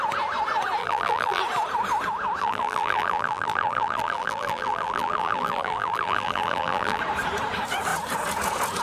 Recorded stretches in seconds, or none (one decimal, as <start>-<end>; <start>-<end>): 0.0-0.8; 1.4-2.4; 7.0-8.8

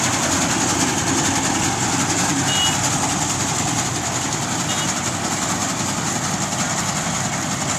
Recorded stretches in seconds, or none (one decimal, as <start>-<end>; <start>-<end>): 0.0-2.3; 5.1-7.8